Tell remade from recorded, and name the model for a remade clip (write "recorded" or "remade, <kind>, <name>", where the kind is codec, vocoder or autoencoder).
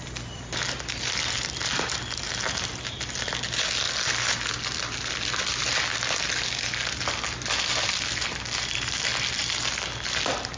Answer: recorded